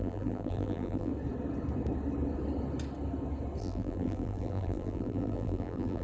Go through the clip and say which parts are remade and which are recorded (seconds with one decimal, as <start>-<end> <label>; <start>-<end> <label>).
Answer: 0.0-1.1 remade; 1.1-3.6 recorded; 3.6-6.0 remade